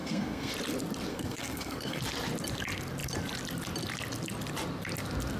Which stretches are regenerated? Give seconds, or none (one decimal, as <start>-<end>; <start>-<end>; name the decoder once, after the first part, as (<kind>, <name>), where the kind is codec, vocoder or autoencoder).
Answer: 0.0-0.5 (codec, SNAC); 1.1-2.0